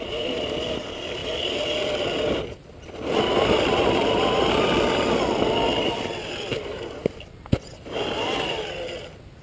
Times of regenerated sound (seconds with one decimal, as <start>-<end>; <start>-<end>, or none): 1.2-2.9